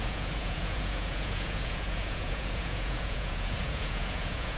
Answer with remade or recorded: remade